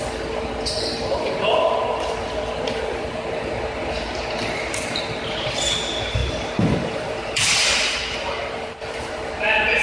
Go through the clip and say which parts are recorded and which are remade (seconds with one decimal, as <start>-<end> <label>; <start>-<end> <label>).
0.0-9.8 remade